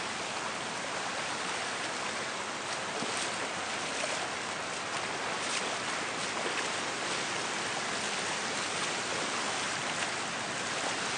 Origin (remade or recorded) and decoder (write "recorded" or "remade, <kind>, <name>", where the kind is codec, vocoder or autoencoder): recorded